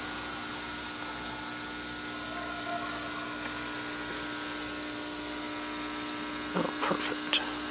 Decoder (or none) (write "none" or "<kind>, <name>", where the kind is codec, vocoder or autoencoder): none